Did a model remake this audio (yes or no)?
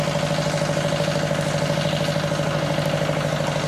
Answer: no